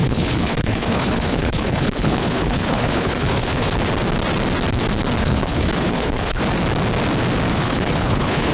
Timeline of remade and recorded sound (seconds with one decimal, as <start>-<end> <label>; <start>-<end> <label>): 0.0-3.7 remade; 3.7-5.2 recorded; 5.2-6.4 remade; 6.4-7.5 recorded; 7.5-8.5 remade

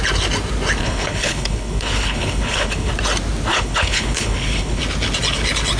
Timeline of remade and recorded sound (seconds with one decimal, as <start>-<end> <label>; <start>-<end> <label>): 0.0-0.8 recorded; 0.8-2.9 remade; 2.9-3.5 recorded; 3.5-4.8 remade; 4.8-5.8 recorded

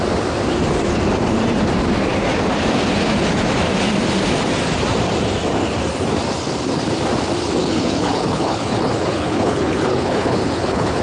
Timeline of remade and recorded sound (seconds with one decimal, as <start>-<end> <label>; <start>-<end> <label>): 0.0-7.6 recorded; 7.6-11.0 remade

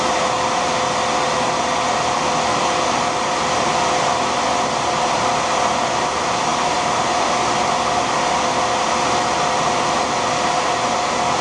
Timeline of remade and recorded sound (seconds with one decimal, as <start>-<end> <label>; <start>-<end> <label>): 0.0-11.4 recorded